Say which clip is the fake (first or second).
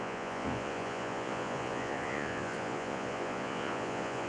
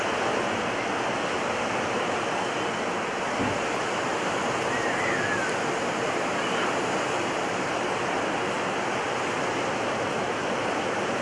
first